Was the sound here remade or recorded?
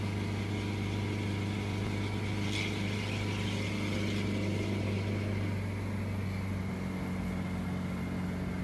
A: recorded